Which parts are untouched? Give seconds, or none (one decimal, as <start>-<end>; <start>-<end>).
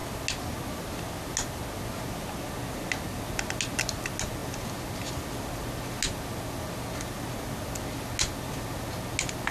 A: 0.0-9.5